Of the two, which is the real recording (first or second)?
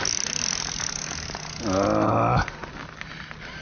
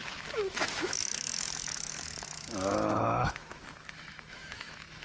first